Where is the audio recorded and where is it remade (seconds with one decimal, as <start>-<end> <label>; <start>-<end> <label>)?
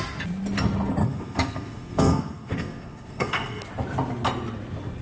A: 0.0-1.0 recorded; 1.0-3.6 remade; 3.6-5.0 recorded